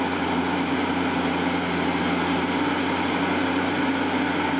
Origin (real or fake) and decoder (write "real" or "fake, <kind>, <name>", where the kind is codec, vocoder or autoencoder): real